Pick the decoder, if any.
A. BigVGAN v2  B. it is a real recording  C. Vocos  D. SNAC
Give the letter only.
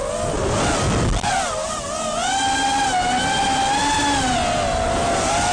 B